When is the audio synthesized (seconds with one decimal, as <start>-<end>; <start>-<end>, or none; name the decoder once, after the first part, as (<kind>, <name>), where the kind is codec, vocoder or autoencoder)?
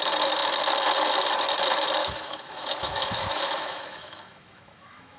2.0-5.2 (autoencoder, DAC-VAE)